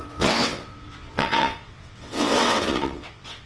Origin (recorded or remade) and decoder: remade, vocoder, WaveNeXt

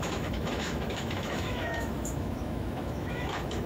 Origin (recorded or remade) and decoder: remade, autoencoder, DAC-VAE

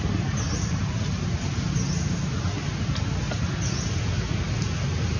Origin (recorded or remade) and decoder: recorded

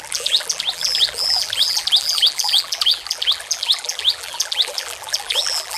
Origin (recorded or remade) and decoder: remade, vocoder, BigVGAN v2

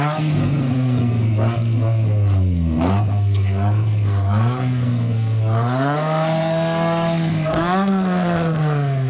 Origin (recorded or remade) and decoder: remade, codec, SNAC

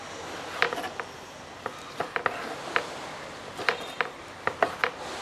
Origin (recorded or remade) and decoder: recorded